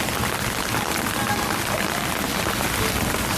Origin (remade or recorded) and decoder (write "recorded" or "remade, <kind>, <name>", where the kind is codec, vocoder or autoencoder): recorded